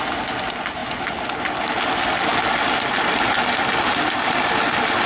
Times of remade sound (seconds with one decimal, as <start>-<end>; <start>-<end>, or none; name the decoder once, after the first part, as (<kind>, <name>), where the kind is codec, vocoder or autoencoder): none